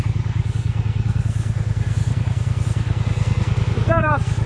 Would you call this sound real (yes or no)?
no